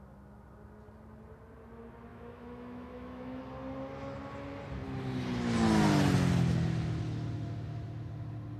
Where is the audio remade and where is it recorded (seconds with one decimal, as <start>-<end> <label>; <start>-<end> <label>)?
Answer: 0.0-2.1 recorded; 2.1-3.4 remade; 3.4-8.6 recorded